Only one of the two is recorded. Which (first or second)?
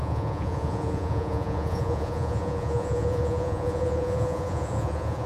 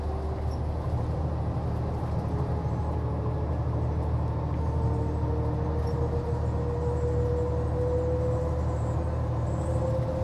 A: second